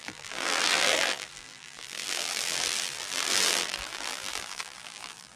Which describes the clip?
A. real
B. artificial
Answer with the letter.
B